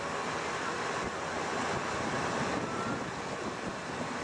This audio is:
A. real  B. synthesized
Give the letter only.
A